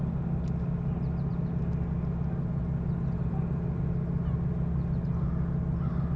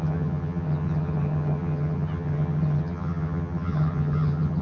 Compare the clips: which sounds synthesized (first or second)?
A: second